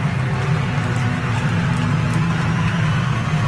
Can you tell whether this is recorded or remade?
recorded